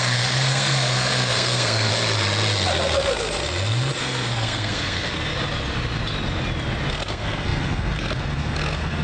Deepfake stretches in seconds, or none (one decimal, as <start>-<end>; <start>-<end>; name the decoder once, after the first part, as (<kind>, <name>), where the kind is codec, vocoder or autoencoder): 0.0-1.9 (codec, SNAC); 4.0-5.3; 6.9-9.0